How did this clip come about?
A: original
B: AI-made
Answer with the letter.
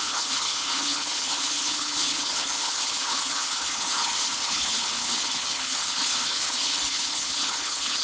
B